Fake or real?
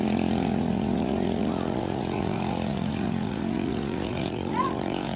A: fake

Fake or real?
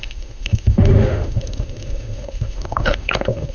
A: fake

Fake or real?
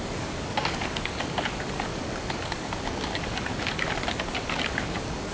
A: fake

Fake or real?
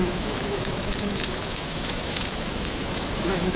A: fake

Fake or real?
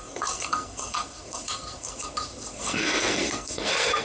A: fake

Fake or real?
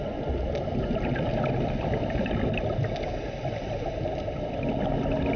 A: real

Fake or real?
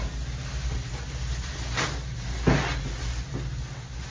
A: real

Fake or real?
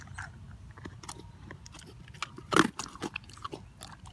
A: real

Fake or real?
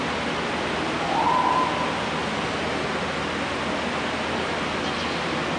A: real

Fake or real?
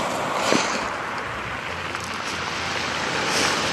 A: real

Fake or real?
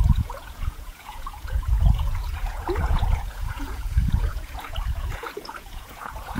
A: fake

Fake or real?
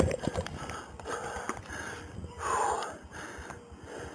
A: real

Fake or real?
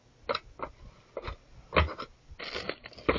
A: real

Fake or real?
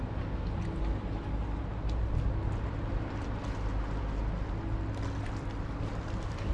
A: real